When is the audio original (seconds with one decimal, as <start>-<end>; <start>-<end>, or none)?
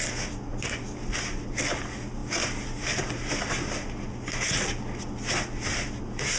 0.0-6.4